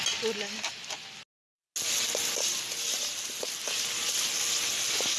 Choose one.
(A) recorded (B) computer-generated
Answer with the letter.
A